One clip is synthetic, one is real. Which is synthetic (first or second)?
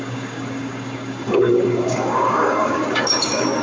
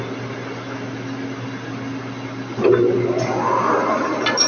first